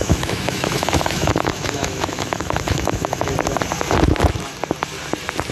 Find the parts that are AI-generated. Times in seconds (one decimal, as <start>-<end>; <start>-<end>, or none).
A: 0.0-3.3